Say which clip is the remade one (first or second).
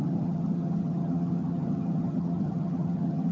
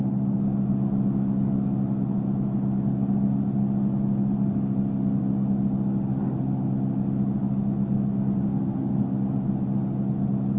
first